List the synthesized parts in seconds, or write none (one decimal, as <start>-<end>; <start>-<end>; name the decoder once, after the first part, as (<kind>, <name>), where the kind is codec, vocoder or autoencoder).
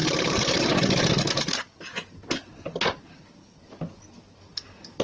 0.0-0.6 (vocoder, BigVGAN v2)